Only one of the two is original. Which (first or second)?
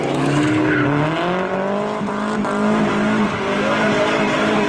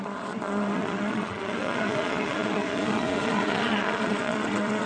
first